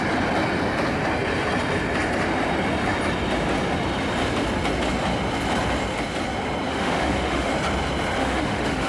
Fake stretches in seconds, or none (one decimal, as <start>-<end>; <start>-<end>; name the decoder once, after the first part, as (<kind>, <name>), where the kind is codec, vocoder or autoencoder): 6.7-7.5 (autoencoder, DAC-VAE); 8.2-8.9